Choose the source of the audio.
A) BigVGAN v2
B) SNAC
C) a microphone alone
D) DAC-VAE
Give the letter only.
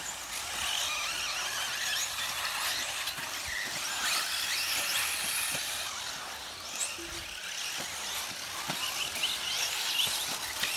C